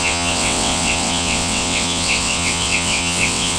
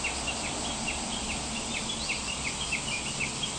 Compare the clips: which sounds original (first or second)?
second